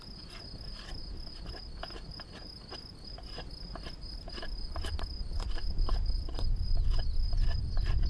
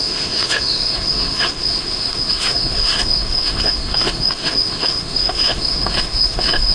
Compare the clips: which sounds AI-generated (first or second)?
second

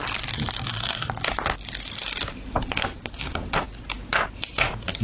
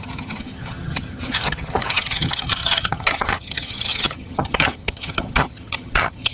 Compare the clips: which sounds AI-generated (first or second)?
second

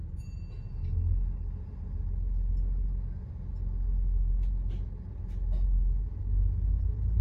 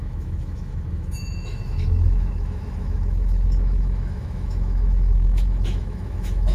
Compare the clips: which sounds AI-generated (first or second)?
second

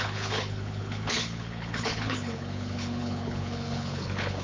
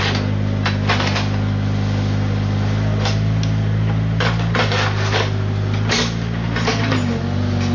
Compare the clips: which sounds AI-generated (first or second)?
first